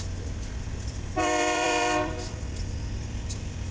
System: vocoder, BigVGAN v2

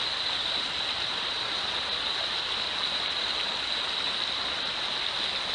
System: none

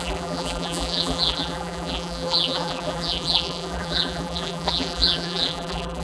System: vocoder, BigVGAN v2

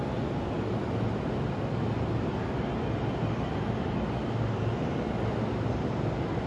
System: none